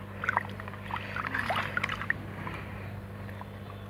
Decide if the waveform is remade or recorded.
recorded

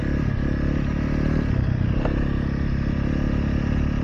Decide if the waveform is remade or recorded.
recorded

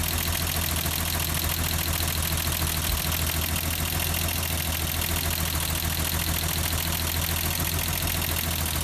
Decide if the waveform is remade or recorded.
recorded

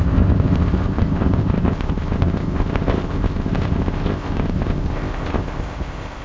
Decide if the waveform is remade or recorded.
remade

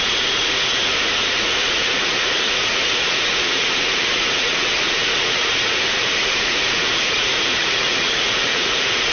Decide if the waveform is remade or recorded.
remade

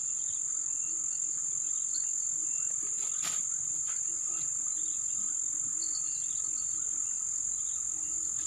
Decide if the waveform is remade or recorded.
recorded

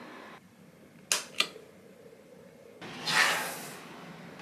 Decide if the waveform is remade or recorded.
recorded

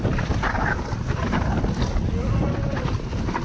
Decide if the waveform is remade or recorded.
recorded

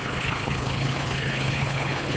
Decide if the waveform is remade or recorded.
remade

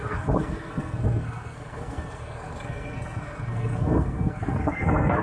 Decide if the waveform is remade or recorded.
remade